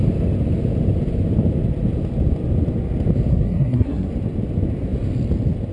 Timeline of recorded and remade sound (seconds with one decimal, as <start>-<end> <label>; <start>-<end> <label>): 0.0-3.3 recorded; 3.3-4.1 remade; 4.1-5.7 recorded